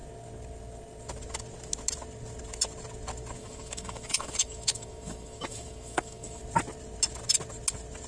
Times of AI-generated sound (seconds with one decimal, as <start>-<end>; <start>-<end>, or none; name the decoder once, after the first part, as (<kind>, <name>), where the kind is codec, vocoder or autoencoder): 3.4-6.4 (autoencoder, DAC-VAE)